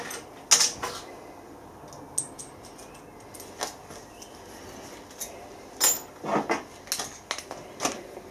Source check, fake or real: real